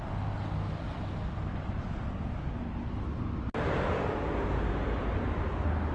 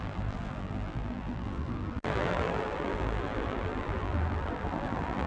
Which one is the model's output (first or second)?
second